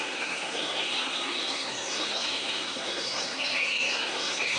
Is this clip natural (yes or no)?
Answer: no